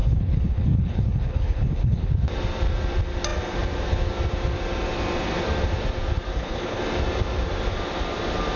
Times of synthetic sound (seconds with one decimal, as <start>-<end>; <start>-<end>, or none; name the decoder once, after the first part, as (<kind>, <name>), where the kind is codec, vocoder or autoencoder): 0.0-2.1 (codec, HILCodec); 6.3-6.8